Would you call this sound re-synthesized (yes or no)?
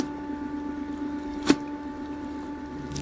no